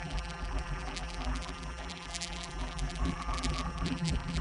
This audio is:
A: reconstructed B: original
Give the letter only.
A